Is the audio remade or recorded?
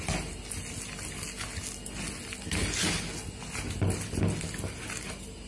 recorded